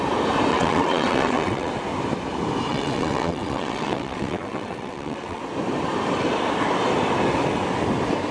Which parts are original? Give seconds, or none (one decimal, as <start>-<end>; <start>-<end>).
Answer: 0.0-0.5; 1.7-2.7; 5.4-8.3